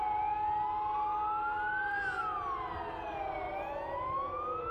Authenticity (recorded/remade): recorded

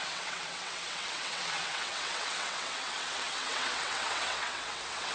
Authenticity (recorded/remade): remade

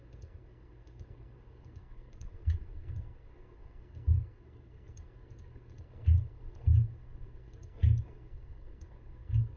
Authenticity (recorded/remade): remade